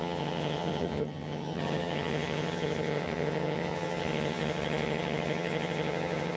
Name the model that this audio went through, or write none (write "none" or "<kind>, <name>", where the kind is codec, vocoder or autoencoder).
vocoder, HiFi-GAN